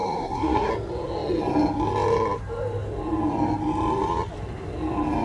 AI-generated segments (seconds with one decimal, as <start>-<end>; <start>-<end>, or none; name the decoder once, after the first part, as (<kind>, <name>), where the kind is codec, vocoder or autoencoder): 0.0-0.7 (codec, SNAC)